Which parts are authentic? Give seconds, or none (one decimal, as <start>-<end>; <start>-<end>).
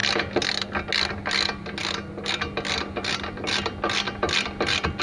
0.0-5.0